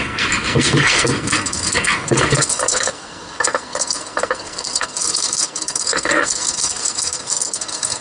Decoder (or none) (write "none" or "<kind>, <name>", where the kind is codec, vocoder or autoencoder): codec, SNAC